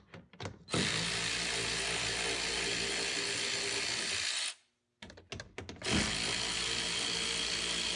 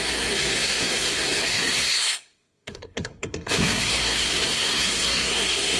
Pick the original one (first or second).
first